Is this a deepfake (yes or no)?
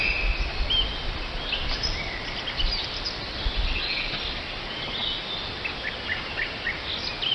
no